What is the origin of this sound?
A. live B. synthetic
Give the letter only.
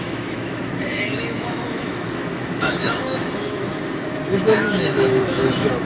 B